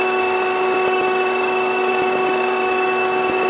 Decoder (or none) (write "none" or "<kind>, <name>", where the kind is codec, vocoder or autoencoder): codec, DAC